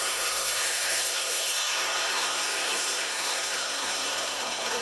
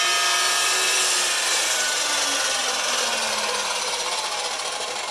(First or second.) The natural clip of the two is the second